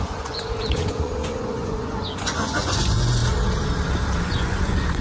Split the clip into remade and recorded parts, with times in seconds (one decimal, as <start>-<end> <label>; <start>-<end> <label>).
0.0-3.2 remade; 3.2-4.2 recorded; 4.2-5.0 remade